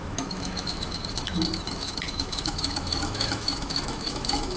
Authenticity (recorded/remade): remade